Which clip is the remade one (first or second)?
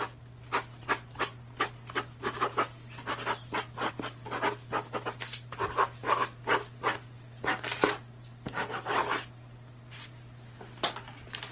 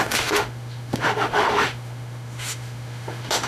second